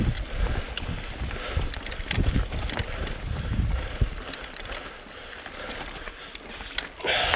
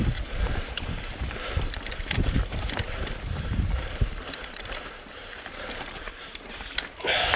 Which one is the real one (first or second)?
first